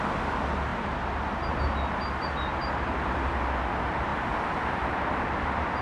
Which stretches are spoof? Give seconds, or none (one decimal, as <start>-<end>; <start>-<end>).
0.7-1.5; 2.5-3.3; 4.1-5.8